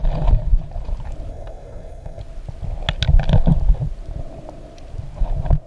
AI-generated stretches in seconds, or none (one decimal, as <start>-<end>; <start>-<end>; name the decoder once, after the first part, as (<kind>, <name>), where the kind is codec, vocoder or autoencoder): 1.3-2.2 (codec, SNAC)